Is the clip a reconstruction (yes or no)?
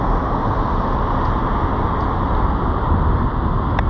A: no